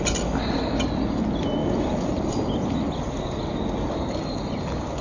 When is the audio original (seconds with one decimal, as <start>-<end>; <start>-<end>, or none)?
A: 0.0-5.0